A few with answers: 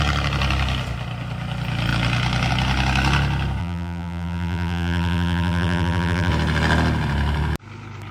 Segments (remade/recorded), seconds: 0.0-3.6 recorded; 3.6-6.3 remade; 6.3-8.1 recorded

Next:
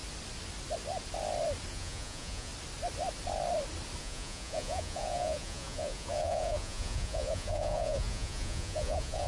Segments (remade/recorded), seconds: 0.0-1.7 recorded; 1.7-2.5 remade; 2.5-4.0 recorded; 4.0-9.3 remade

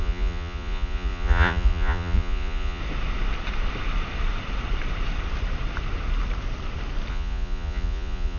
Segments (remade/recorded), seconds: 0.0-2.8 remade; 2.8-7.1 recorded; 7.1-8.4 remade

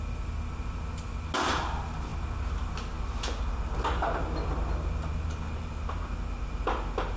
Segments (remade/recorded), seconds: 0.0-7.2 recorded

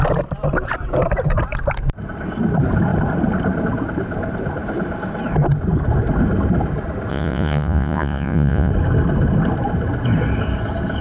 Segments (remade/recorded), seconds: 0.0-7.1 recorded; 7.1-8.7 remade; 8.7-11.0 recorded

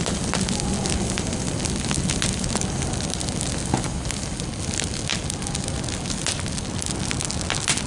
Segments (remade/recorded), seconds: 0.0-7.9 recorded

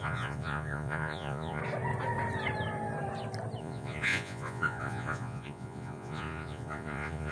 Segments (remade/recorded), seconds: 0.0-1.6 remade; 1.6-3.6 recorded; 3.6-7.3 remade

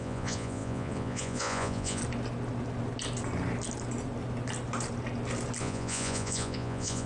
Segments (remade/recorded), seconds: 0.0-2.0 remade; 2.0-5.6 recorded; 5.6-7.1 remade